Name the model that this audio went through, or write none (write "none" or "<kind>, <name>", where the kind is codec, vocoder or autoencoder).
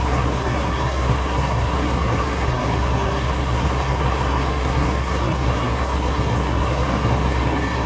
codec, SNAC